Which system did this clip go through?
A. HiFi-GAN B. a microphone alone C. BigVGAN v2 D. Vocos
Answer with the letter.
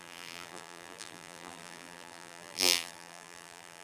C